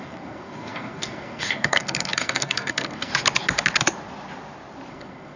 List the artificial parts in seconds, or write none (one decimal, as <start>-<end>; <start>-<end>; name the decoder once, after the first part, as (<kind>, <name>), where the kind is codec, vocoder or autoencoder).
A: 0.0-3.1 (codec, SNAC); 4.9-5.4